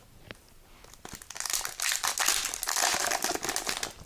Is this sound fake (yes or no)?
no